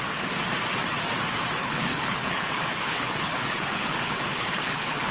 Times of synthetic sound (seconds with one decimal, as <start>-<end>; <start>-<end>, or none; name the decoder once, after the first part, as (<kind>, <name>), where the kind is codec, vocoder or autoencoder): 1.6-5.1 (codec, HILCodec)